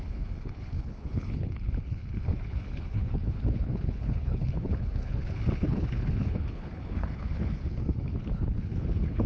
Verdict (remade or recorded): remade